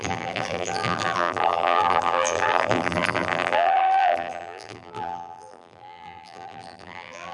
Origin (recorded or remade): remade